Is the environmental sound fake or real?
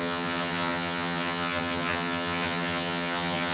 fake